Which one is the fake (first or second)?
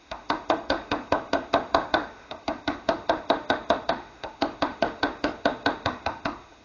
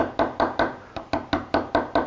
first